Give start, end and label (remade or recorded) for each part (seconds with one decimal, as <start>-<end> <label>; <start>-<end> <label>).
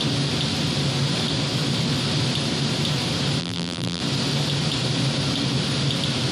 0.0-3.4 recorded; 3.4-4.0 remade; 4.0-6.3 recorded